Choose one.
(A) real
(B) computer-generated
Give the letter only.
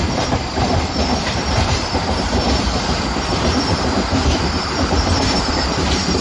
B